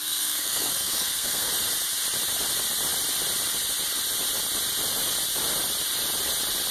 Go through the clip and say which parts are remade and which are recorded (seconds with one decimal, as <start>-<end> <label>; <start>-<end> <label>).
0.0-1.5 remade; 1.5-6.7 recorded